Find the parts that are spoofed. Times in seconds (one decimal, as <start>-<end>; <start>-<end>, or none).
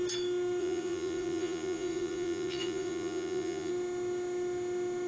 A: 0.6-3.7